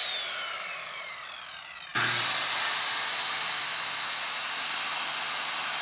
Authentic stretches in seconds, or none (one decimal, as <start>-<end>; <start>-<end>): 0.0-5.8

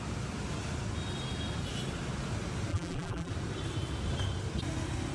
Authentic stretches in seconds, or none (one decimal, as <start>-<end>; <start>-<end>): 0.0-2.7; 3.3-5.1

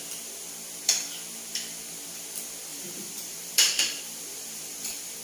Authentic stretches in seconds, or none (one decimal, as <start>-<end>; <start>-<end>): 0.0-2.7

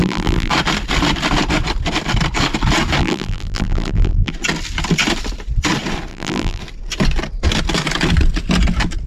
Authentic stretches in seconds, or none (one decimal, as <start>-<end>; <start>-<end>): 0.5-3.0; 4.3-6.1; 6.6-9.1